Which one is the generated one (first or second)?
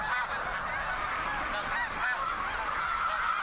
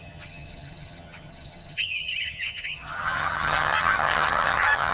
second